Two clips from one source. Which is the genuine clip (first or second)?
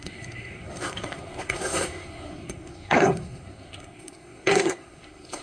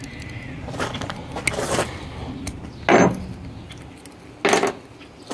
second